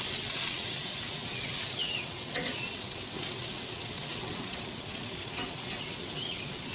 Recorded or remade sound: remade